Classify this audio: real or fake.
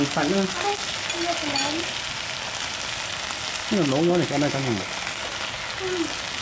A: real